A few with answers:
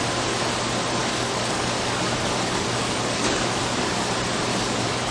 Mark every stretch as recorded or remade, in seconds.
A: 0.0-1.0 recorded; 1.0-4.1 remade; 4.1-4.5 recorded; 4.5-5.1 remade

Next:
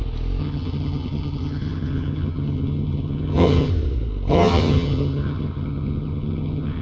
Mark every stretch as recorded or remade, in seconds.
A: 0.0-0.4 recorded; 0.4-3.7 remade; 3.7-4.3 recorded; 4.3-6.8 remade